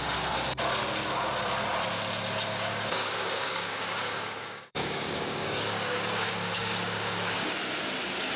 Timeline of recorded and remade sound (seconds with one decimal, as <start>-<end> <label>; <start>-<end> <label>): 0.0-2.9 recorded; 2.9-7.6 remade; 7.6-8.4 recorded